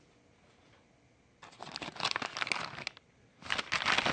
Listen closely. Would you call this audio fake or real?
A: real